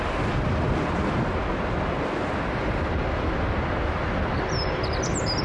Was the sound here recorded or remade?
recorded